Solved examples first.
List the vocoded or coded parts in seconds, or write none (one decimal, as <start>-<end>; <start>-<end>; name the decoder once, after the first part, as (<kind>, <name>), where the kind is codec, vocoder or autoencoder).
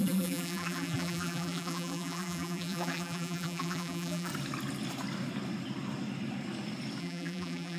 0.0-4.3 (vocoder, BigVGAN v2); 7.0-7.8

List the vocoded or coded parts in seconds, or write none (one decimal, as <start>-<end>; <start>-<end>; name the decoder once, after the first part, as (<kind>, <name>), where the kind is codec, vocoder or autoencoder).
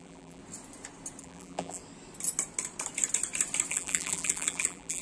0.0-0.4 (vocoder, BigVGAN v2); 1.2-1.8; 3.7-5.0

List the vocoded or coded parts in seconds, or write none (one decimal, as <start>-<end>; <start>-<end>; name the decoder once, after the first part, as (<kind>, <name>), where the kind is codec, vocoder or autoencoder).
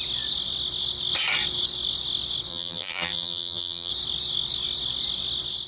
2.5-3.9 (vocoder, BigVGAN v2)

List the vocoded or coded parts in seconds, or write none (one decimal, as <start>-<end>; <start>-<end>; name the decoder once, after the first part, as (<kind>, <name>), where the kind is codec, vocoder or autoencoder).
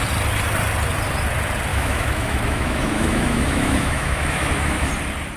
1.7-4.9 (autoencoder, DAC-VAE)